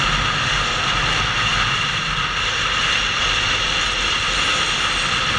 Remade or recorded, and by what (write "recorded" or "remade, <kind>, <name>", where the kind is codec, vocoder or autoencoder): recorded